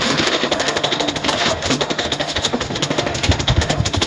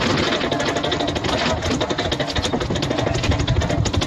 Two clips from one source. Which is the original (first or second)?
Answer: second